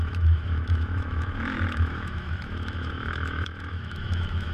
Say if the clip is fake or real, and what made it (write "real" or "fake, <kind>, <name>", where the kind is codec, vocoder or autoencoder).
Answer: fake, autoencoder, DAC-VAE